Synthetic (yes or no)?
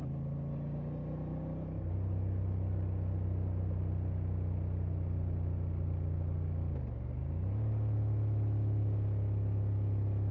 no